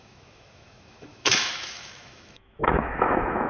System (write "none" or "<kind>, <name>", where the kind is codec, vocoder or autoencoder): autoencoder, DAC-VAE